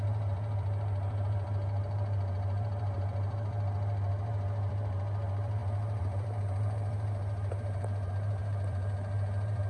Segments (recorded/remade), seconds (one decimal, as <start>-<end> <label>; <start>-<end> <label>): 0.0-9.7 remade